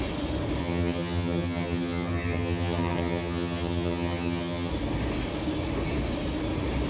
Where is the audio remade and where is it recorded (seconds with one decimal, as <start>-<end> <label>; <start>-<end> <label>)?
0.0-0.6 recorded; 0.6-4.7 remade; 4.7-6.9 recorded